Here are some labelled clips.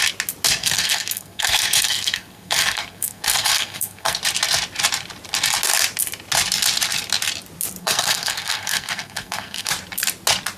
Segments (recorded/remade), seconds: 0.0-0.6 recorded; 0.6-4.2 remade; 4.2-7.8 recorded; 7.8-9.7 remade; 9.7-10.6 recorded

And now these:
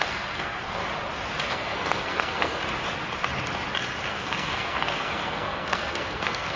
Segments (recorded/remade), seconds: 0.0-0.8 remade; 0.8-1.4 recorded; 1.4-2.6 remade; 2.6-4.1 recorded; 4.1-6.6 remade

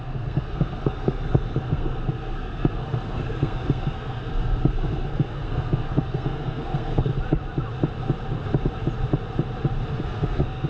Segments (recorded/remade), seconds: 0.0-7.1 remade; 7.1-10.0 recorded; 10.0-10.7 remade

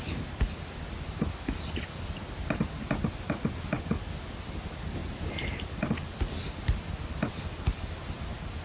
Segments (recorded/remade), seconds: 0.0-8.6 recorded

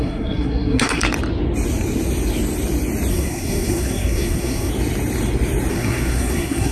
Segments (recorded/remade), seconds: 0.0-1.0 remade; 1.0-3.1 recorded; 3.1-4.7 remade; 4.7-5.7 recorded; 5.7-6.7 remade